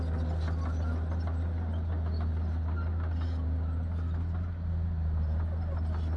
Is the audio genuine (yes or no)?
yes